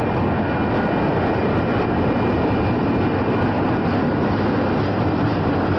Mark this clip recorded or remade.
recorded